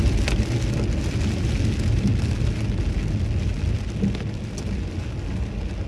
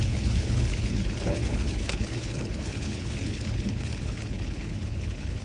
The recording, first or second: first